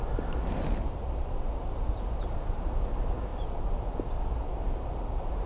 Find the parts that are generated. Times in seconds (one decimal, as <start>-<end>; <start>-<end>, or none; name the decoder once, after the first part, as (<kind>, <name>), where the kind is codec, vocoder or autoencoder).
0.8-3.3 (vocoder, BigVGAN v2); 4.5-5.5

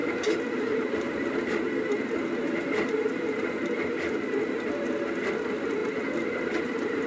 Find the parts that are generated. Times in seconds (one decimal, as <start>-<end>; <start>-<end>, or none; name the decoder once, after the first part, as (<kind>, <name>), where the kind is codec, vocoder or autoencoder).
0.0-1.9 (vocoder, BigVGAN v2)

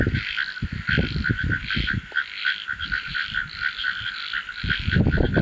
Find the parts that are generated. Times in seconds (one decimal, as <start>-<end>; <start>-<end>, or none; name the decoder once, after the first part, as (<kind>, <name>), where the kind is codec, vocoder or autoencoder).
1.6-4.0 (vocoder, BigVGAN v2)

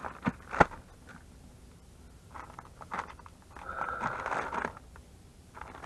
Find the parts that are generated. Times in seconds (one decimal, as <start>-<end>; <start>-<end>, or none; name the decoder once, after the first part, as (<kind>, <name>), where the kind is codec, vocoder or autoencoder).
none